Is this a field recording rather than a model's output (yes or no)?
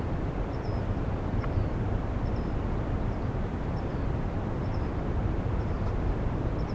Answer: no